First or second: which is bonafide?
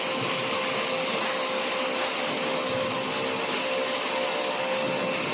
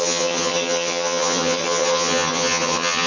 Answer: first